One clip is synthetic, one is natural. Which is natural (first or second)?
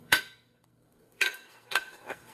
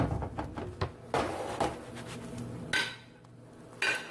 second